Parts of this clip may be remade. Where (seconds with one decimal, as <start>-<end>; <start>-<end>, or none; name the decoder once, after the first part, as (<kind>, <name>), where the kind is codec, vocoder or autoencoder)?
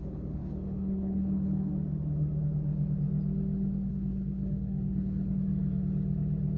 0.0-1.7 (codec, HILCodec); 3.9-5.5